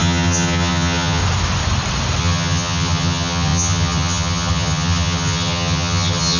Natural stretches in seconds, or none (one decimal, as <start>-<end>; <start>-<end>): 1.2-2.2